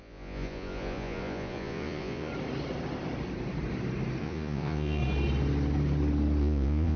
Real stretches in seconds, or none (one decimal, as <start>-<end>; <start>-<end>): 2.3-4.2; 5.0-6.4